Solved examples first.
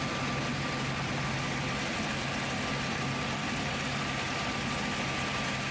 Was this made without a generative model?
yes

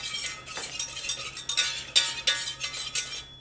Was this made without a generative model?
yes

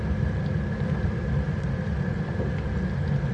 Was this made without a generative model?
yes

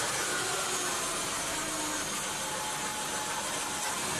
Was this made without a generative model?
yes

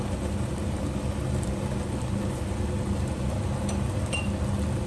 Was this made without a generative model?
yes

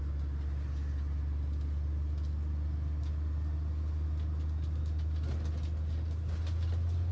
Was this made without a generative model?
yes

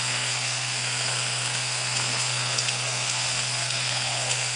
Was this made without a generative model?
no